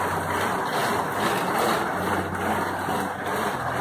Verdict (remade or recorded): recorded